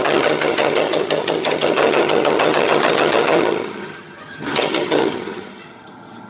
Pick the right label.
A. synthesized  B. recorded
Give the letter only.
A